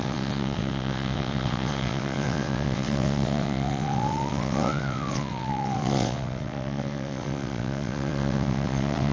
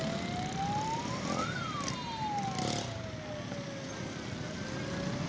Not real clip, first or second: first